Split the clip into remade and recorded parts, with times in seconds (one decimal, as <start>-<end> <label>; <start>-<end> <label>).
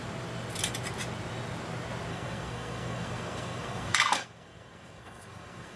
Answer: 0.0-2.1 recorded; 2.1-5.8 remade